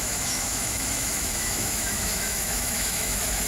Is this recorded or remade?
remade